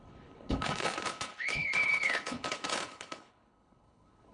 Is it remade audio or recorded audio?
remade